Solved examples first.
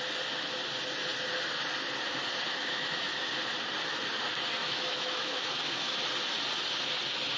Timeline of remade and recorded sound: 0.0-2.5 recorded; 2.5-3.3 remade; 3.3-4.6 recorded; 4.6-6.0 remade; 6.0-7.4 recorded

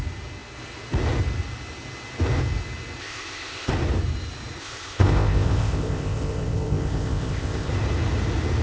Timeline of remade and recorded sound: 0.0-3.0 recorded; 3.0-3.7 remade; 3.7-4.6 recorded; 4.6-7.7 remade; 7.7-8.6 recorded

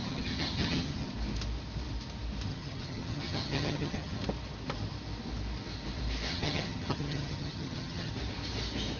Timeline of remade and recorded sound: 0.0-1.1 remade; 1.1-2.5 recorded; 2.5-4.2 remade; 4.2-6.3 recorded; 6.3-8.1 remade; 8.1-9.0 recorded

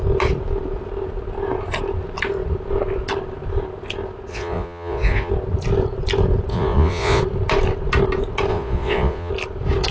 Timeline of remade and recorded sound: 0.0-4.3 recorded; 4.3-5.3 remade; 5.3-6.5 recorded; 6.5-7.2 remade; 7.2-8.5 recorded; 8.5-9.3 remade; 9.3-9.9 recorded